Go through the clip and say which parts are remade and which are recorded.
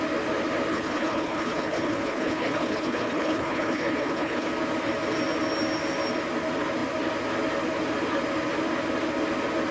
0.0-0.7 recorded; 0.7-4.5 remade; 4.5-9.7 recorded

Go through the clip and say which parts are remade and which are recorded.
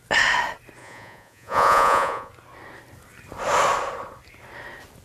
0.0-0.8 recorded; 0.8-2.3 remade; 2.3-5.0 recorded